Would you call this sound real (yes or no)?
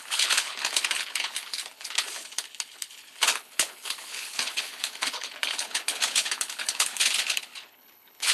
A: no